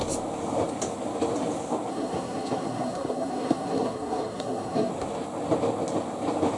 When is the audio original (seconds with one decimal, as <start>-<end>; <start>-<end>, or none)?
0.0-1.9; 4.9-6.6